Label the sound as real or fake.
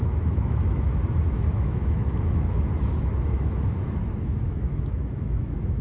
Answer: fake